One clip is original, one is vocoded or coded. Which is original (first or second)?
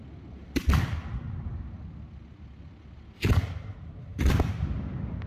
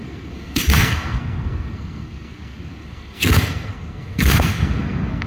first